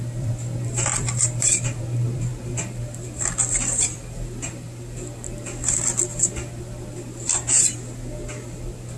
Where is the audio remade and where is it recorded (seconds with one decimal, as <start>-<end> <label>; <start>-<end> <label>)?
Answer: 0.0-9.0 remade

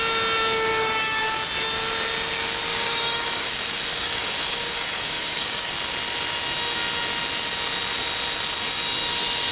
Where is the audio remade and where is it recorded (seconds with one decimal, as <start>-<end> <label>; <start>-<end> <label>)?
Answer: 0.0-0.7 recorded; 0.7-1.2 remade; 1.2-2.7 recorded; 2.7-3.5 remade; 3.5-3.9 recorded; 3.9-5.7 remade; 5.7-9.5 recorded

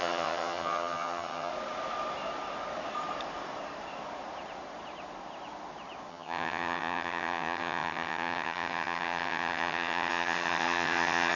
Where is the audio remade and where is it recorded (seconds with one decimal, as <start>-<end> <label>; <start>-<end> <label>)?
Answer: 0.0-1.5 remade; 1.5-6.1 recorded; 6.1-11.4 remade

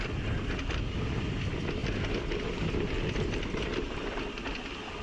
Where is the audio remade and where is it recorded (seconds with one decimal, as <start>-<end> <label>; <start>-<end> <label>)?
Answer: 0.0-5.0 recorded

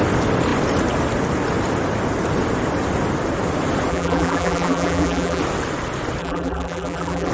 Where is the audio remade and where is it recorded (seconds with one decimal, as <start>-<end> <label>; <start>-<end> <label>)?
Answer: 0.0-3.9 recorded; 3.9-5.4 remade; 5.4-6.2 recorded; 6.2-7.3 remade

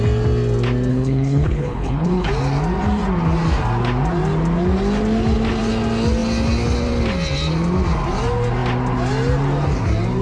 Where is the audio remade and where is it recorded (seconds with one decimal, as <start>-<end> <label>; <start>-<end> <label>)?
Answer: 0.0-0.9 recorded; 0.9-2.3 remade; 2.3-10.2 recorded

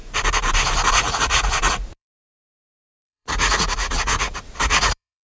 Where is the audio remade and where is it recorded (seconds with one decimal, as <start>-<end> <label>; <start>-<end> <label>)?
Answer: 0.0-0.9 recorded; 0.9-5.2 remade

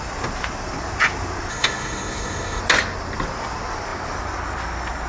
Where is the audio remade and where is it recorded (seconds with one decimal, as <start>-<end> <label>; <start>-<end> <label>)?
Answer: 0.0-1.5 recorded; 1.5-2.6 remade; 2.6-5.1 recorded